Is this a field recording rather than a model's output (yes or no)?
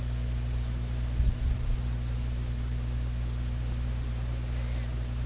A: yes